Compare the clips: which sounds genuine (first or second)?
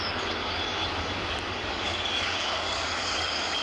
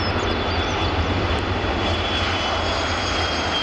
second